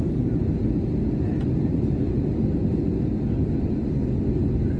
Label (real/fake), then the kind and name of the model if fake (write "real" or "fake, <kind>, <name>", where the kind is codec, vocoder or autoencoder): real